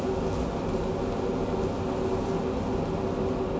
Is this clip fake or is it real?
real